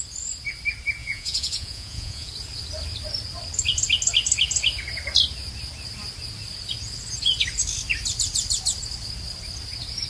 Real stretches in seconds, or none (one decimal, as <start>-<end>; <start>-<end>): 0.0-1.0; 2.3-10.1